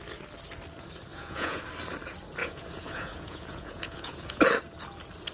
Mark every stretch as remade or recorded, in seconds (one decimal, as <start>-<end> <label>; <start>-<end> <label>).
0.0-1.1 recorded; 1.1-1.6 remade; 1.6-2.4 recorded; 2.4-4.4 remade; 4.4-5.3 recorded